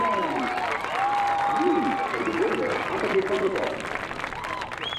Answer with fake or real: real